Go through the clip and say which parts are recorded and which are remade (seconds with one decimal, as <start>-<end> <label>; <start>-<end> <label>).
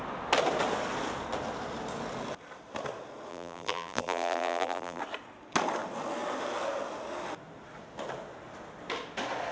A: 0.0-3.3 recorded; 3.3-5.0 remade; 5.0-9.5 recorded